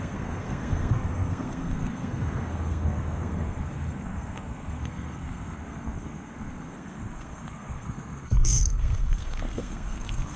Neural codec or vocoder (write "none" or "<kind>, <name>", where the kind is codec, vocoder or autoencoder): codec, SNAC